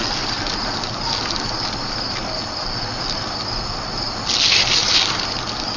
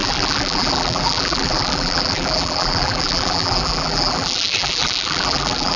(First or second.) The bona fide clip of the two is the first